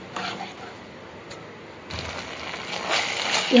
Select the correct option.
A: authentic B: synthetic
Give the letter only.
A